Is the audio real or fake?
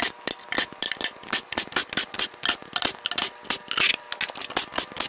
real